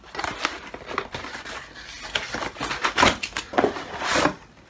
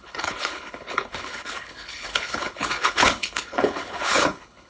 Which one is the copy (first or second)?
second